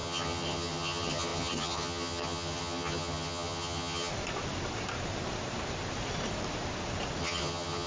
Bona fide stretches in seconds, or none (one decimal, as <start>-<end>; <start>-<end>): 4.1-7.2